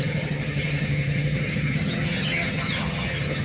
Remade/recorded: remade